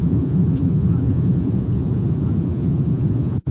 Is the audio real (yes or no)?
no